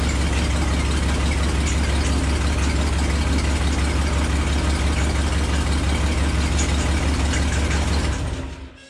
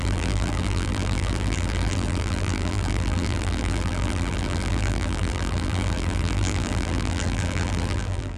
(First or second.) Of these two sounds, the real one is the first